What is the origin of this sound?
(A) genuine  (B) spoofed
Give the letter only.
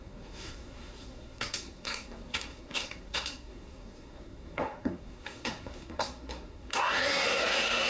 B